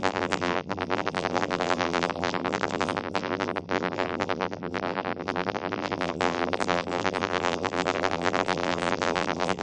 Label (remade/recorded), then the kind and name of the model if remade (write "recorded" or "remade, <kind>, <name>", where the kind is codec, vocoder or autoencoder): remade, vocoder, BigVGAN v2